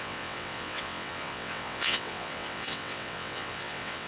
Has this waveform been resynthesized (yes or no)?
yes